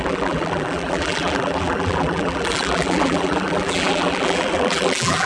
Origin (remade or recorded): remade